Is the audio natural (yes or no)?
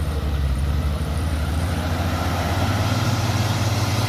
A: no